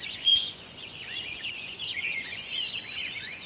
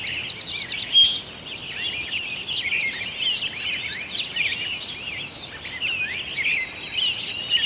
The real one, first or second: second